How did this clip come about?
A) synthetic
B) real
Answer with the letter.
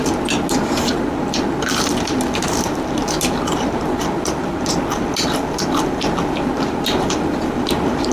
B